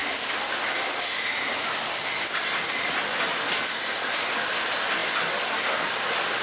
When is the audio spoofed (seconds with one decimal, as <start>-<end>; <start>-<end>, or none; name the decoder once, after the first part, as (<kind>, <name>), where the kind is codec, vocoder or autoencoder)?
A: none